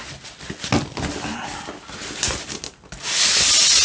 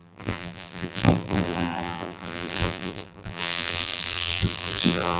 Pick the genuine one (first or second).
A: first